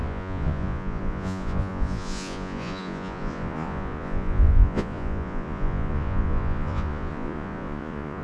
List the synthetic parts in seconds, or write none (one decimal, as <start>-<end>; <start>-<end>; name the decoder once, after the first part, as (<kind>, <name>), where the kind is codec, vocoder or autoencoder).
0.0-8.2 (vocoder, Vocos)